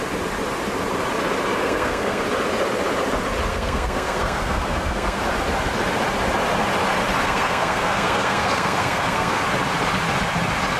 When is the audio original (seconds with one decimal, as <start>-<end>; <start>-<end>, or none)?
0.0-1.6; 2.2-3.5; 5.2-7.2; 9.4-10.8